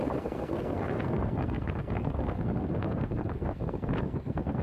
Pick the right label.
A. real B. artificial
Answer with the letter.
B